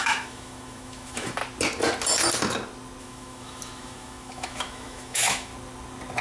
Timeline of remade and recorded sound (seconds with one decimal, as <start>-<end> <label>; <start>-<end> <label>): 0.0-1.4 remade; 1.4-3.0 recorded; 3.0-5.5 remade; 5.5-6.2 recorded